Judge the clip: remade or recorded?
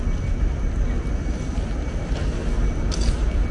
recorded